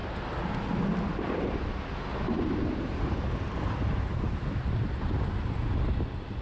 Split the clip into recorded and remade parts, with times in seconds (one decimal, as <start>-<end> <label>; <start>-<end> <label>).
0.0-2.1 recorded; 2.1-3.2 remade; 3.2-6.4 recorded